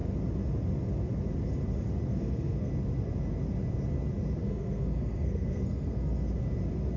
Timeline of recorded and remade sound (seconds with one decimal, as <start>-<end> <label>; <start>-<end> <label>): 0.0-2.1 recorded; 2.1-2.7 remade; 2.7-4.4 recorded; 4.4-6.3 remade; 6.3-7.0 recorded